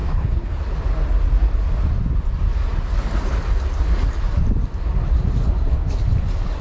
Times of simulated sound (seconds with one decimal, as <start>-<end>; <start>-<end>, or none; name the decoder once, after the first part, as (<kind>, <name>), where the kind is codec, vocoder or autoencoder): 0.0-0.6 (codec, HILCodec)